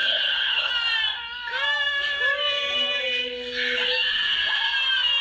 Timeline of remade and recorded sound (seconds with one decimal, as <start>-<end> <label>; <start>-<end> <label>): 0.0-0.7 remade; 0.7-5.2 recorded